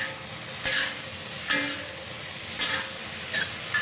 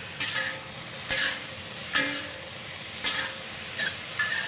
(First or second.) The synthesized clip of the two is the second